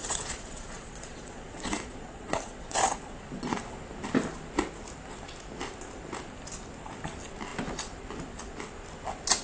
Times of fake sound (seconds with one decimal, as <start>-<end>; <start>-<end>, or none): 0.0-3.6